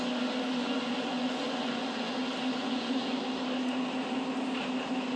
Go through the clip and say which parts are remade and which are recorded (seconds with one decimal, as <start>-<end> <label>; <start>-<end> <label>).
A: 0.0-0.6 recorded; 0.6-2.1 remade; 2.1-2.6 recorded; 2.6-3.2 remade; 3.2-5.2 recorded